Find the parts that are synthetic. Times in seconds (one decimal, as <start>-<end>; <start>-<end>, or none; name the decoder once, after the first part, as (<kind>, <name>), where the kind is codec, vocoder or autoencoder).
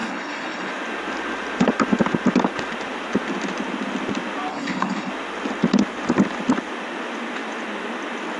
0.0-0.7 (codec, HILCodec); 4.5-5.1